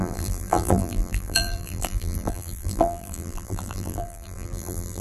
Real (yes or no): no